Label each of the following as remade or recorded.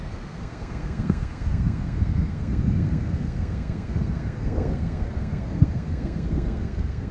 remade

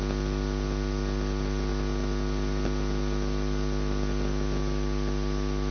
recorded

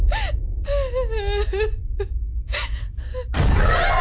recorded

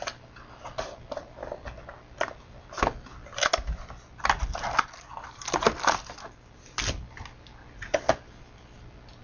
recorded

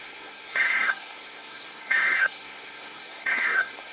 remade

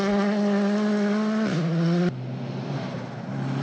recorded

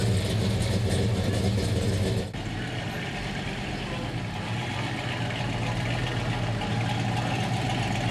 recorded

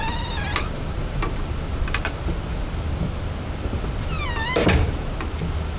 recorded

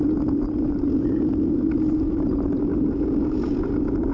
recorded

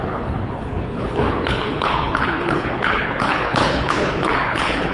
remade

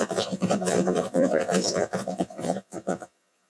remade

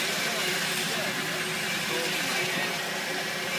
recorded